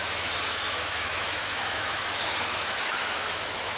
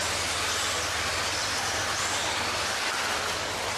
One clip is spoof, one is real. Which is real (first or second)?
second